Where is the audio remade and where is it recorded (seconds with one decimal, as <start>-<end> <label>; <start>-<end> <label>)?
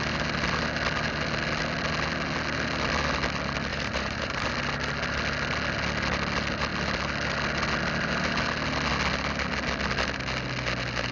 0.0-3.7 recorded; 3.7-4.5 remade; 4.5-11.1 recorded